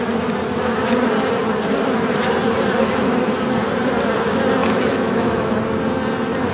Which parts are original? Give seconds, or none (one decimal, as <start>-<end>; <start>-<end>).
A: 0.0-4.6; 5.5-6.5